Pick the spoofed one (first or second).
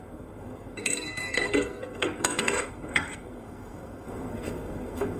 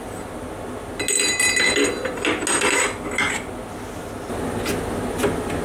first